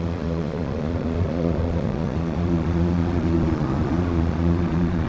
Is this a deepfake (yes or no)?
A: yes